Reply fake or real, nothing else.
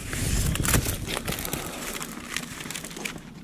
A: real